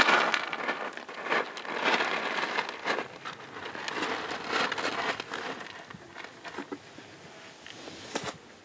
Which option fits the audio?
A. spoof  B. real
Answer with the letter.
B